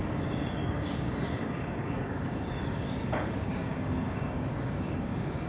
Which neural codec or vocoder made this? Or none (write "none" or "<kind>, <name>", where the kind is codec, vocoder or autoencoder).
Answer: codec, DAC